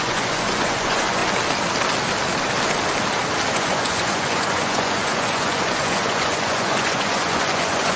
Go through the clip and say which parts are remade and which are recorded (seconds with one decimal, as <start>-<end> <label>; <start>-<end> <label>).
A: 0.0-1.2 remade; 1.2-3.5 recorded; 3.5-8.0 remade